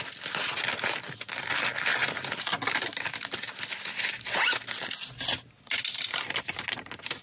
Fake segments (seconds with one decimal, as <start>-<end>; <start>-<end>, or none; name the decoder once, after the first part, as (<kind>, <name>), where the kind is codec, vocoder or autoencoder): none